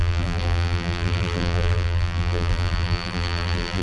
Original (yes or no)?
no